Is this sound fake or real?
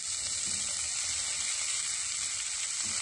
real